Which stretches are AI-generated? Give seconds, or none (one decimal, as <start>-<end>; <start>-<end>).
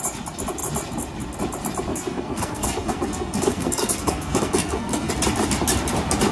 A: 1.9-5.1